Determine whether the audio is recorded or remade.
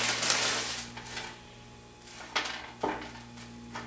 recorded